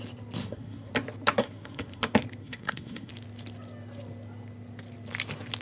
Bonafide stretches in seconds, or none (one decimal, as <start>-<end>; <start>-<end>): 0.0-0.4; 0.9-1.4; 2.0-2.4; 3.1-5.6